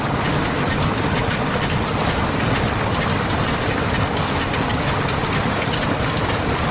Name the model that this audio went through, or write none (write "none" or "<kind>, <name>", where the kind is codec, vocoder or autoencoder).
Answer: none